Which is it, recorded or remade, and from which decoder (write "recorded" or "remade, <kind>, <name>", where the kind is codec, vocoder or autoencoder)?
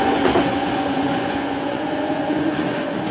remade, vocoder, Vocos